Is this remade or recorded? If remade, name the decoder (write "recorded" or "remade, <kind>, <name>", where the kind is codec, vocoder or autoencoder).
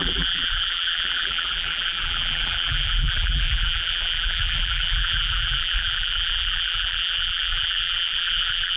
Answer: remade, vocoder, BigVGAN v2